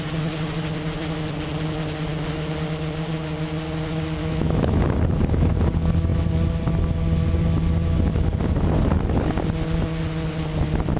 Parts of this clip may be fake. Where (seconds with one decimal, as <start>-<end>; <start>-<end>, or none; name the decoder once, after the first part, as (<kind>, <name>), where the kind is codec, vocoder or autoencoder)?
4.2-4.8 (autoencoder, DAC-VAE)